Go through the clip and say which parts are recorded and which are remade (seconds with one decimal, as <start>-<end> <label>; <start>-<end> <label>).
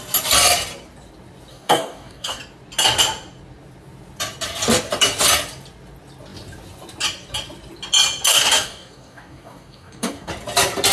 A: 0.0-1.5 recorded; 1.5-2.4 remade; 2.4-8.3 recorded; 8.3-10.3 remade; 10.3-10.9 recorded